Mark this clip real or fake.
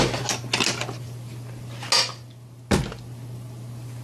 real